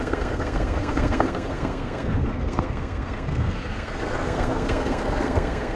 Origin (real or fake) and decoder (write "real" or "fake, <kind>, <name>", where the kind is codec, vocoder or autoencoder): fake, codec, SNAC